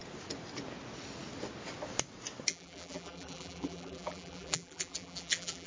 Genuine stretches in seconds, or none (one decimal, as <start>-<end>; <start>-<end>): 0.0-2.5